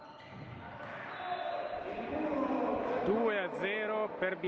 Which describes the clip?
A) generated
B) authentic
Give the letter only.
B